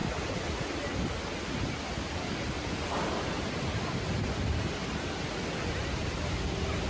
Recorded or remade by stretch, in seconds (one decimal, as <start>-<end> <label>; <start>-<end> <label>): 0.0-6.9 recorded